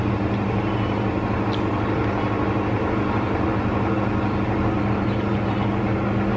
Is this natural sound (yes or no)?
yes